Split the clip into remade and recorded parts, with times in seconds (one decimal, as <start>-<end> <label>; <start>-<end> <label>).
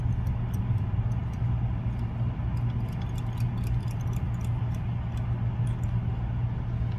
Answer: 0.0-7.0 recorded